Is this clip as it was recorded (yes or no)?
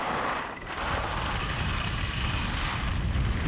yes